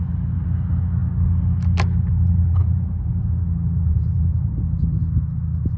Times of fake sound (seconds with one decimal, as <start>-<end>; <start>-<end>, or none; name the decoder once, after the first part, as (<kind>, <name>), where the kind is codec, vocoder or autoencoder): 2.6-3.3 (vocoder, BigVGAN v2); 3.9-4.5